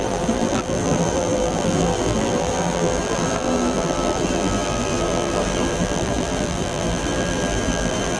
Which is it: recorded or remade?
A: remade